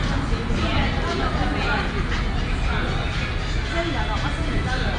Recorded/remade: recorded